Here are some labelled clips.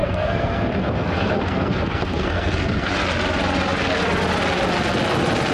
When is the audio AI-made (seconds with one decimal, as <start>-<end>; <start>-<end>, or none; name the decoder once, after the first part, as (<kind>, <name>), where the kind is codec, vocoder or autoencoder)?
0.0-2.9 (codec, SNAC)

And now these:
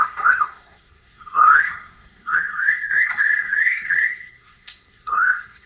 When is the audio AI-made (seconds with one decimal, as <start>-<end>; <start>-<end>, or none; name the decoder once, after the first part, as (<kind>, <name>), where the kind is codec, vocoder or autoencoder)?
0.0-5.7 (codec, SNAC)

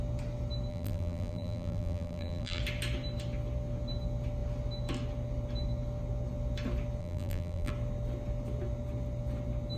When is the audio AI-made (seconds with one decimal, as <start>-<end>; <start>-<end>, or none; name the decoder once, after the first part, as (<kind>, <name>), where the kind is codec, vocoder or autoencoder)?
0.7-2.6 (vocoder, BigVGAN v2); 7.0-7.7